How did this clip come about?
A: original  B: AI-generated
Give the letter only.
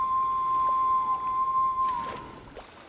A